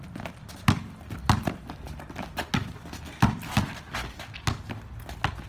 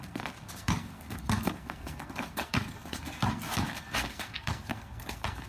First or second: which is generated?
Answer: second